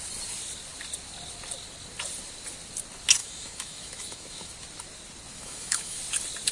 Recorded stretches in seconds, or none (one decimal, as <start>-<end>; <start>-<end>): 0.0-3.2; 4.5-5.3; 6.0-6.5